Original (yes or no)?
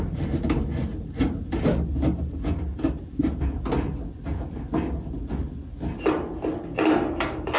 yes